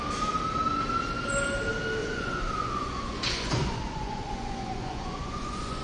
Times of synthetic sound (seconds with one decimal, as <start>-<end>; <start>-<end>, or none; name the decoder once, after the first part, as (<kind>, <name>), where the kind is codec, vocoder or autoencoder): 2.0-5.8 (vocoder, Vocos)